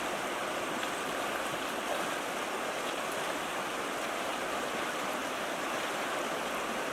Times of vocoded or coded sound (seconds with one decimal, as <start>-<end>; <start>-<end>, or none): none

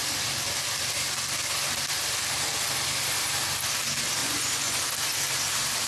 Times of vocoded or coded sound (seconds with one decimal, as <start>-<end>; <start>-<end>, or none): 4.2-4.8

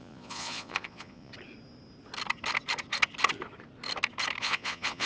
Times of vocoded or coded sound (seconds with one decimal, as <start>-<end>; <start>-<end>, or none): 0.0-1.3; 4.4-5.1

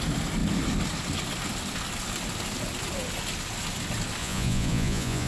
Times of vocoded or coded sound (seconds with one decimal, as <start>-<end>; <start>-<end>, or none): 4.2-5.3

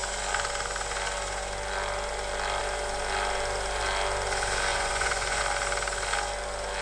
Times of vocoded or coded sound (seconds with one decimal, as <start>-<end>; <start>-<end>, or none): 4.7-5.4

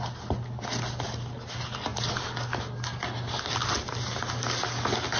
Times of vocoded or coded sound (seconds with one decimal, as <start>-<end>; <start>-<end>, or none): none